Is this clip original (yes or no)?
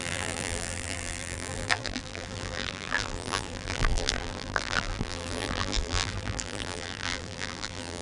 no